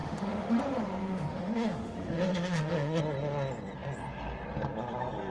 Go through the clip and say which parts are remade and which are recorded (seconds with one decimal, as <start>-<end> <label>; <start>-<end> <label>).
0.0-0.6 remade; 0.6-1.0 recorded; 1.0-3.0 remade; 3.0-5.3 recorded